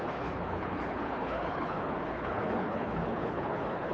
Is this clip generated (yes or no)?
yes